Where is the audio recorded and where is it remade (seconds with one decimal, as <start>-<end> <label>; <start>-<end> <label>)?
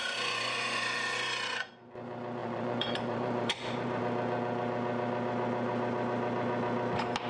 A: 0.0-1.7 remade; 1.7-2.4 recorded; 2.4-4.0 remade; 4.0-7.3 recorded